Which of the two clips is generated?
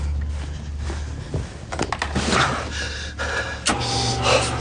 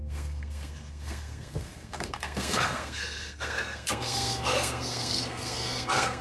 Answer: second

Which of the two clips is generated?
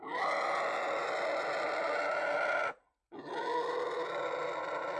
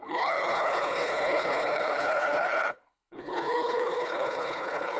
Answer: second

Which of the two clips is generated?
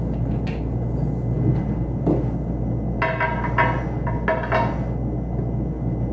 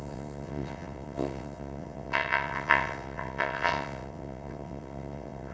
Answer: second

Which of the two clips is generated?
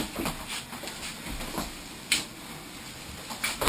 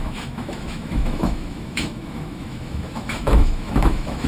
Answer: second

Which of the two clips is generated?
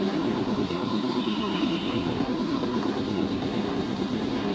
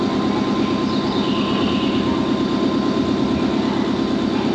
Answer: first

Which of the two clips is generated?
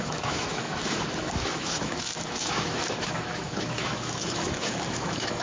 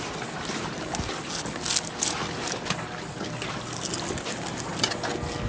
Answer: first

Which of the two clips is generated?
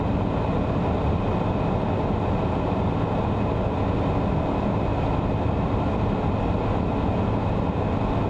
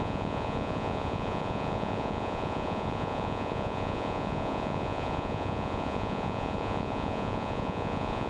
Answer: second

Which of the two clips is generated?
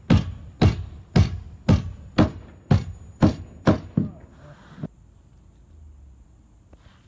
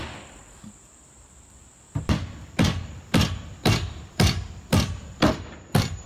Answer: second